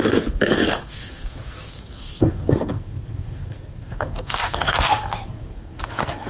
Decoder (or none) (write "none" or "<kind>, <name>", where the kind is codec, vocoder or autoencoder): codec, SNAC